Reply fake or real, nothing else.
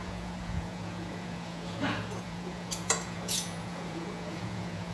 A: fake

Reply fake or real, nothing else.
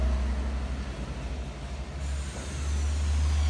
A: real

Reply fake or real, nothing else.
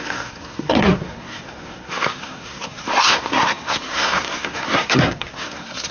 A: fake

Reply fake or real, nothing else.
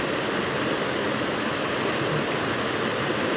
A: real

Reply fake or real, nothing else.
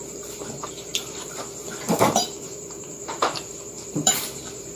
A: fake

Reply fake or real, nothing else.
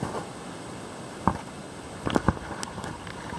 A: fake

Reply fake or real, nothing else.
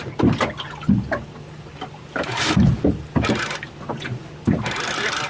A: real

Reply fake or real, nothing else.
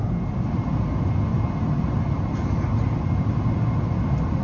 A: real